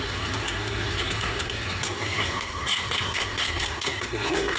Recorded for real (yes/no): no